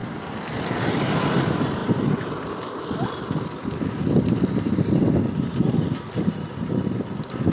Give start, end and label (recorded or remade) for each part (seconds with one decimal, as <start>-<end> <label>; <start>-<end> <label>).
0.0-7.5 recorded